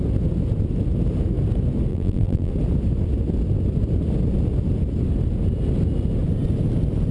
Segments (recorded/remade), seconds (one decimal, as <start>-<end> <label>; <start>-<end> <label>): 0.0-1.9 recorded; 1.9-2.5 remade; 2.5-7.1 recorded

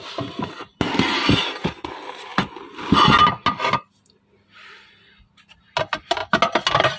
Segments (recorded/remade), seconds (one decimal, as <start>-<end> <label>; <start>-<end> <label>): 0.0-7.0 recorded

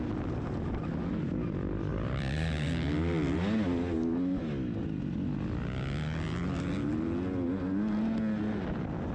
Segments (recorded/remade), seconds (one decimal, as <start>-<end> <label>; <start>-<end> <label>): 0.0-1.9 recorded; 1.9-2.9 remade; 2.9-9.1 recorded

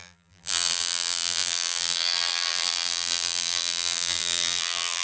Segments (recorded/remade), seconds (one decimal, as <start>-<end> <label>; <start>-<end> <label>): 0.0-5.0 remade

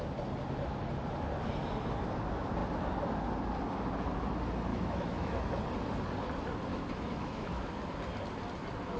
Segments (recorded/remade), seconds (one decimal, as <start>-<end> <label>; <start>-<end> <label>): 0.0-4.7 recorded; 4.7-5.6 remade; 5.6-6.7 recorded; 6.7-7.7 remade; 7.7-9.0 recorded

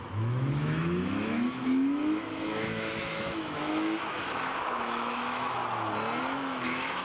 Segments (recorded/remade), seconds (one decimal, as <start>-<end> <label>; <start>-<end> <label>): 0.0-5.6 remade; 5.6-6.2 recorded; 6.2-7.0 remade